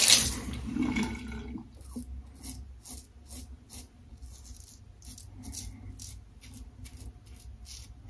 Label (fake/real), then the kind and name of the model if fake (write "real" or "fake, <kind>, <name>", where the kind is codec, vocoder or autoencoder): real